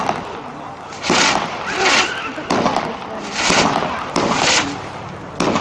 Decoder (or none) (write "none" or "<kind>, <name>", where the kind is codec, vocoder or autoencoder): none